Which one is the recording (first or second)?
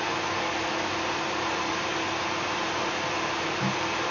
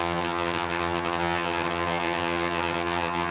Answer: first